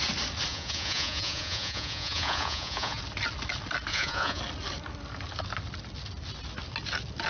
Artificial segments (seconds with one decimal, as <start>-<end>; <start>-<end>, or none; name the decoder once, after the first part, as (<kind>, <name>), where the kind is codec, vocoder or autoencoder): 0.5-3.0 (vocoder, Vocos); 3.9-4.4